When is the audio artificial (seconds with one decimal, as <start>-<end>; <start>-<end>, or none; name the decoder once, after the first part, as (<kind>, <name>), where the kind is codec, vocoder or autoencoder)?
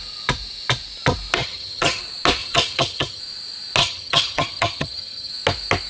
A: 1.4-2.0 (vocoder, HiFi-GAN); 2.4-3.2; 3.8-5.3